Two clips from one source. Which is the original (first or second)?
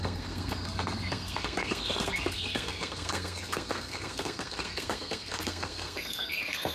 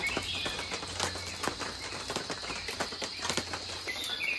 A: second